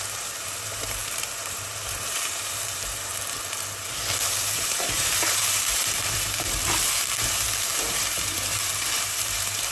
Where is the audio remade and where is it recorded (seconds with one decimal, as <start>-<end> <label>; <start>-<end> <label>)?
0.0-3.1 remade; 3.1-3.8 recorded; 3.8-9.7 remade